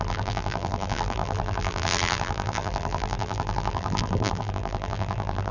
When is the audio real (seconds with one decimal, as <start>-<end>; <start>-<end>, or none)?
none